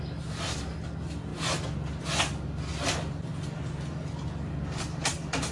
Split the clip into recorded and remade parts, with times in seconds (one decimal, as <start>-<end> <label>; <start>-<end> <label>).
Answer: 0.0-5.5 recorded